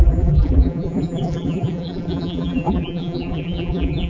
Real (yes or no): no